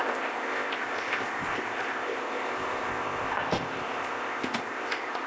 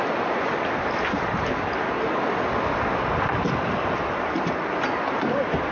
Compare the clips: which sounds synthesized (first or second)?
first